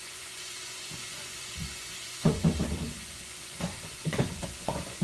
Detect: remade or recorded remade